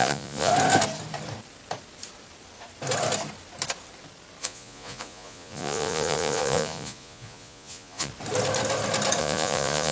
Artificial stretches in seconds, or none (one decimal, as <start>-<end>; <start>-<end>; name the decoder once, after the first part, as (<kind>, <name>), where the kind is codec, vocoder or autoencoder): 0.0-0.5 (vocoder, Vocos); 4.4-8.1; 9.2-9.9